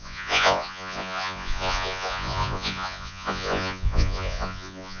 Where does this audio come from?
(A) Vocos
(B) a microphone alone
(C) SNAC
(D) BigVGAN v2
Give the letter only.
A